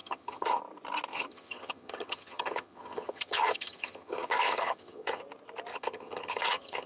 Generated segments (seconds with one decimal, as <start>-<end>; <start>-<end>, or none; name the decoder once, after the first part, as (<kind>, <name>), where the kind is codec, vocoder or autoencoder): 0.0-0.6 (vocoder, HiFi-GAN); 1.1-5.2; 5.7-6.9